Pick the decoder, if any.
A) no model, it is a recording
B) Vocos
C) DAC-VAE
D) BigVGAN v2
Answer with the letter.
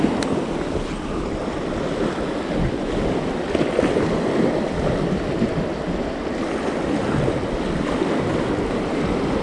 A